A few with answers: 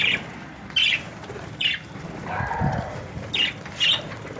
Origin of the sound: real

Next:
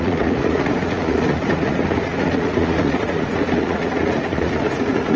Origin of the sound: fake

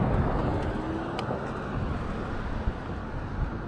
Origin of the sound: real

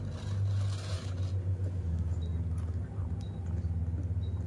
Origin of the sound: real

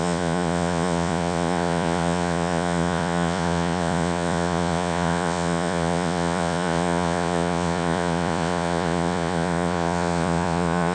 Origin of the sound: fake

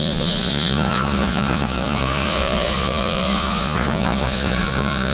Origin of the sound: fake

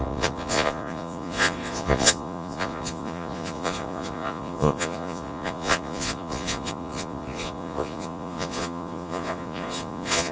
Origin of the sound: fake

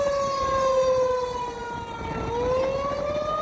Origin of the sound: real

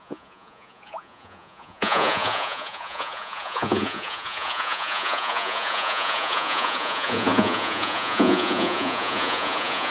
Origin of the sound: fake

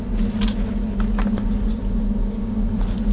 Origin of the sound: real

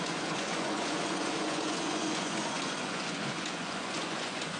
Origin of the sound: fake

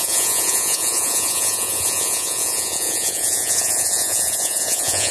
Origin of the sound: fake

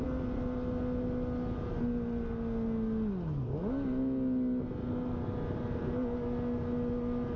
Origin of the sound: real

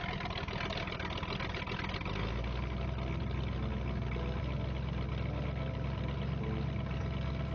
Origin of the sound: real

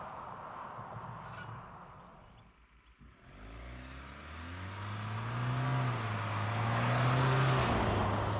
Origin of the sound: real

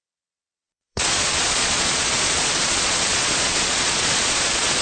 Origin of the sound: fake